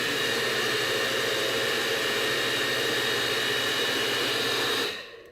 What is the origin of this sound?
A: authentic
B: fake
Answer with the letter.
A